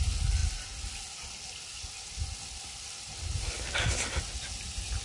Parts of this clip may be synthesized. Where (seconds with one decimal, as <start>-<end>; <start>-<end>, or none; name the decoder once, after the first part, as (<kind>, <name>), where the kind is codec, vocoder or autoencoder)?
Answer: none